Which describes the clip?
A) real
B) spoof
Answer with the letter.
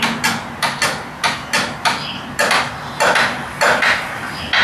A